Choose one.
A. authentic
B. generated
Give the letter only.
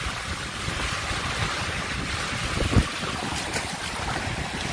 A